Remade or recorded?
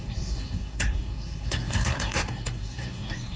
remade